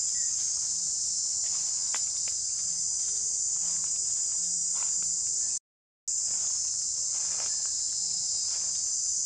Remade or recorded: recorded